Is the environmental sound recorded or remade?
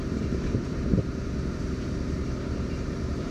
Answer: remade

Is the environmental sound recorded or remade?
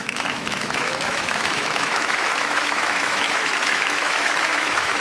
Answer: remade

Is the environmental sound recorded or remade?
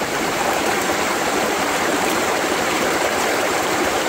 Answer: remade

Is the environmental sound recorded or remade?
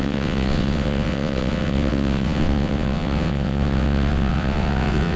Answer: remade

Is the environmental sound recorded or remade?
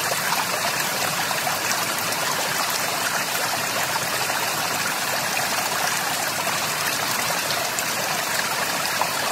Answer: remade